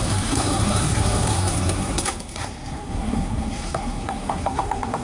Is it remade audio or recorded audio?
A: remade